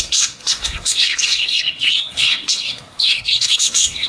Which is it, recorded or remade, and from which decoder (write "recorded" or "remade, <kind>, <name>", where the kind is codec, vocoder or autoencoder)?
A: remade, codec, SNAC